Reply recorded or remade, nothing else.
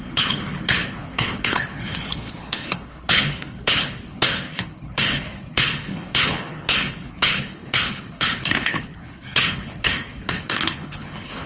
remade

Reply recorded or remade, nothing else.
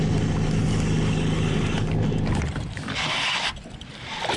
recorded